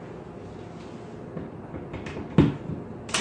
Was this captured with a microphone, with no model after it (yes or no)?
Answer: yes